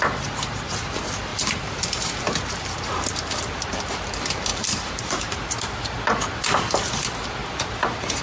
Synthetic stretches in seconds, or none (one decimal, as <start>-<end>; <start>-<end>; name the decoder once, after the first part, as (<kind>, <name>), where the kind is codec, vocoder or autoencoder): 1.3-2.1 (vocoder, BigVGAN v2); 4.5-5.4; 7.4-8.2